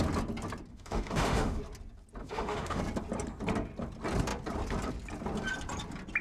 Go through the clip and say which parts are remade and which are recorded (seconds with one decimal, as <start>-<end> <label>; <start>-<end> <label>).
0.0-0.7 recorded; 0.7-1.6 remade; 1.6-2.2 recorded; 2.2-2.8 remade; 2.8-6.2 recorded